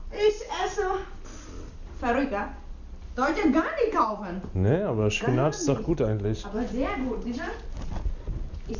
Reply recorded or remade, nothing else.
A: recorded